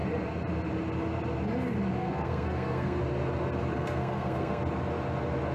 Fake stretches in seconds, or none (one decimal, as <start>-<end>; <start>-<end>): 2.0-3.0; 3.7-4.6